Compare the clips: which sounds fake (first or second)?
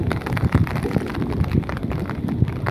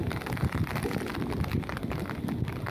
first